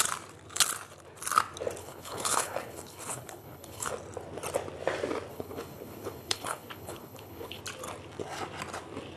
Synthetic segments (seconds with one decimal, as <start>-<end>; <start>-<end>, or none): 1.8-3.9; 5.3-7.6